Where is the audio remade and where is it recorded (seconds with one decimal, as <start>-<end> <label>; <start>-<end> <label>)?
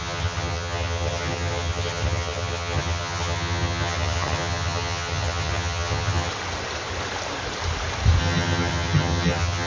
0.0-6.3 remade; 6.3-8.2 recorded; 8.2-9.7 remade